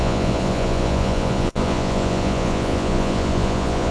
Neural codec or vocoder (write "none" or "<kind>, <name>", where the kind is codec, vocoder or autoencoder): vocoder, Vocos